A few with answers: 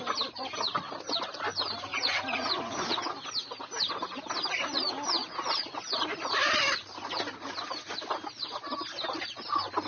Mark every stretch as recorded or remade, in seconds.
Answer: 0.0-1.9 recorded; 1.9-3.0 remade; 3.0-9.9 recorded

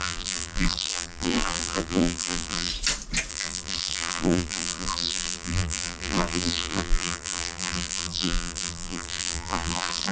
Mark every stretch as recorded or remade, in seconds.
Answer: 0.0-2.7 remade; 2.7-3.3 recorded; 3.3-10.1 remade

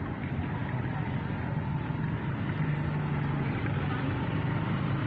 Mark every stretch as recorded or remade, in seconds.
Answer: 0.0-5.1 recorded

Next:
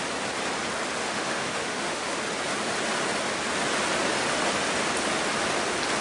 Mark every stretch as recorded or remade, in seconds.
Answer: 0.0-1.0 recorded; 1.0-2.2 remade; 2.2-6.0 recorded

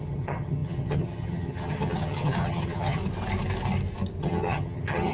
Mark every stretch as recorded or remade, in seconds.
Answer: 0.0-3.0 remade; 3.0-4.2 recorded; 4.2-5.1 remade